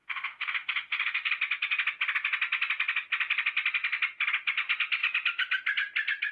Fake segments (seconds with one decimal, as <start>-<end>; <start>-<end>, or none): 0.0-1.3